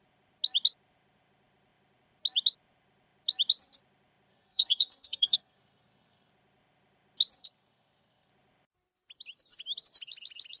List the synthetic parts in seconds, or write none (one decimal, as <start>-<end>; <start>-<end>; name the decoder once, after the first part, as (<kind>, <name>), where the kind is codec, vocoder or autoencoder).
4.3-6.3 (codec, SNAC); 7.4-8.3